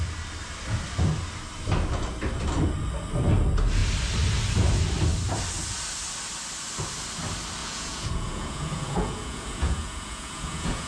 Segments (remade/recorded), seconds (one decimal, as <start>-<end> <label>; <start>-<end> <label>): 0.0-7.6 recorded; 7.6-10.9 remade